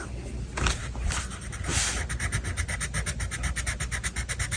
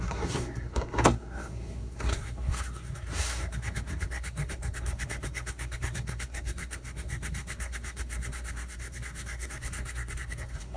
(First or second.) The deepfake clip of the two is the second